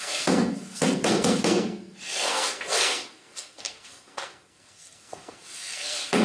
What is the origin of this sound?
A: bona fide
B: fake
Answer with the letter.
B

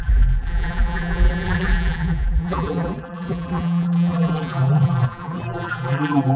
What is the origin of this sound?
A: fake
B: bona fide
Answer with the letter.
A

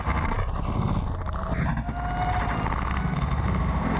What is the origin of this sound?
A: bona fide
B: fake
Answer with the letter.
A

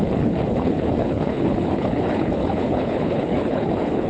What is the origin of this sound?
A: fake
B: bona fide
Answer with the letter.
A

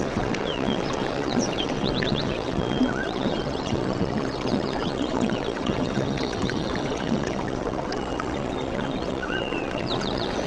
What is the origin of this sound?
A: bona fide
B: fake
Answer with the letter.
B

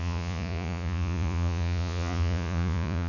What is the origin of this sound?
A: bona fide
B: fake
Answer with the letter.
B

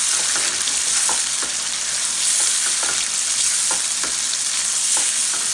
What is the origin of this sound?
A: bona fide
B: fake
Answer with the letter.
A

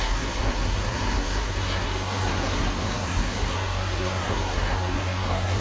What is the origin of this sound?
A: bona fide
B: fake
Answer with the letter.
B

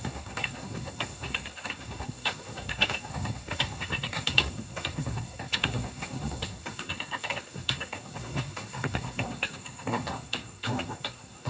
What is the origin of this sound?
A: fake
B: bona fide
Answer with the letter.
A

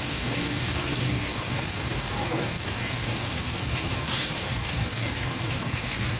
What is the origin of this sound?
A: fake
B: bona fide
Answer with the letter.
A